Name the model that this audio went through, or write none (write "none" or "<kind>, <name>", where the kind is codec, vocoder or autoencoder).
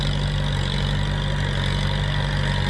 none